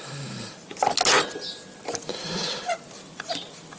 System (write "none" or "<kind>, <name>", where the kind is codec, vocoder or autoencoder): none